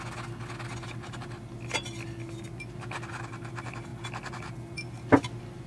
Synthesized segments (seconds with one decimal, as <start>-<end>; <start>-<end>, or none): none